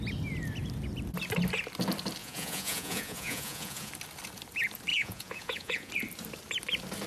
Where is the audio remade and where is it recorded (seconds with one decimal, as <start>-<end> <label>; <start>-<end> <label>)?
0.0-2.2 recorded; 2.2-3.9 remade; 3.9-4.9 recorded; 4.9-5.9 remade; 5.9-7.1 recorded